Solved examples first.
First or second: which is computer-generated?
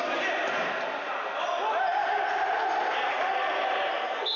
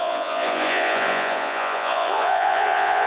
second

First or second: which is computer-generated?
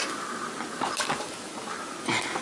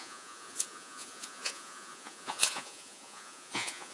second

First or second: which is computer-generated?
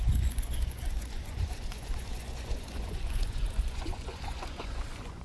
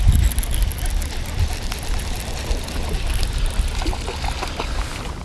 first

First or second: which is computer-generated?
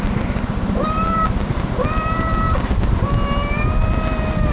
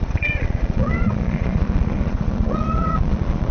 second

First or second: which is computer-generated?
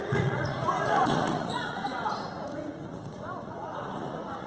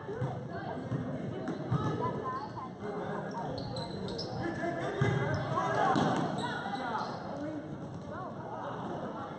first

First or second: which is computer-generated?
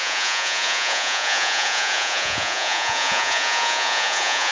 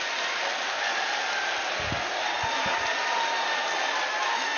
first